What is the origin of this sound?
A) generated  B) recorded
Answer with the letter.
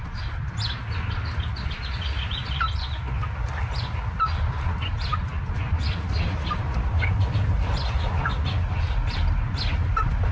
B